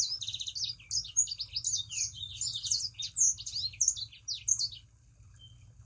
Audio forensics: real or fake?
real